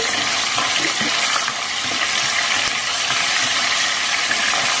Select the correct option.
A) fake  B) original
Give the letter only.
B